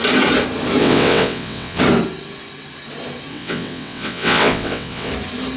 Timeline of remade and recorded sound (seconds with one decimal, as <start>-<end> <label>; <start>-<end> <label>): 0.0-0.8 recorded; 0.8-1.8 remade; 1.8-3.3 recorded; 3.3-5.1 remade; 5.1-5.6 recorded